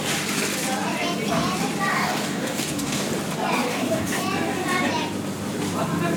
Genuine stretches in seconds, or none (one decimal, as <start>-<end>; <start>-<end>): 0.0-1.9; 3.1-3.7; 4.2-6.2